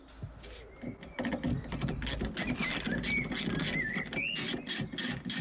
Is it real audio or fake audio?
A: real